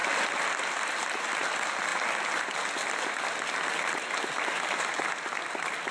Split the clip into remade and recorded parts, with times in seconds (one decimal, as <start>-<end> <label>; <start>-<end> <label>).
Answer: 0.0-5.9 recorded